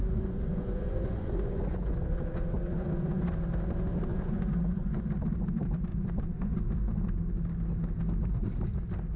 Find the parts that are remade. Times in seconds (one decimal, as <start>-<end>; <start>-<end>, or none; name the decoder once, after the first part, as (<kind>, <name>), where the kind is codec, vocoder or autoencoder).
0.0-3.3 (vocoder, Vocos); 4.1-5.0; 5.9-6.6